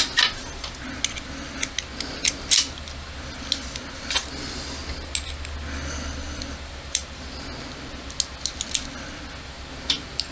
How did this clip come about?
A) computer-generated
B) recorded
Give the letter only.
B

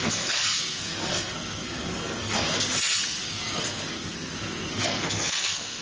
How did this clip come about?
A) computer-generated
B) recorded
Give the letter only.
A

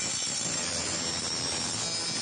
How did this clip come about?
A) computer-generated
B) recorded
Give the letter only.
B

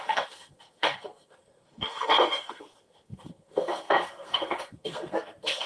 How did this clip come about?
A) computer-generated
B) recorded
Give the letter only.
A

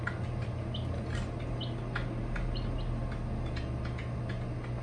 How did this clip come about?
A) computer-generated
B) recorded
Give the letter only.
B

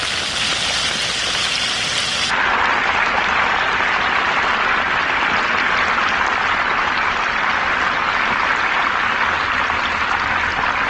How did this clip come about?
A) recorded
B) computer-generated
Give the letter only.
A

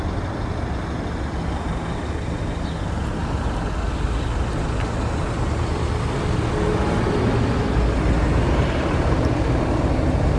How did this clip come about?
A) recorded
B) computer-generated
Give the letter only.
A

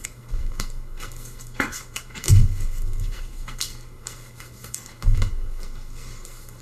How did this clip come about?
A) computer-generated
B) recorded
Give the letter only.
A